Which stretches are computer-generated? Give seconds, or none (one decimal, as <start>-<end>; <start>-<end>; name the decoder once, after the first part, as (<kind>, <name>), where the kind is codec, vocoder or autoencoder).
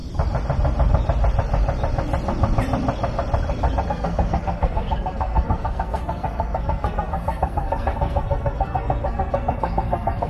3.9-10.3 (codec, SNAC)